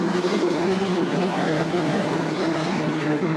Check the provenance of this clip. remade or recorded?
remade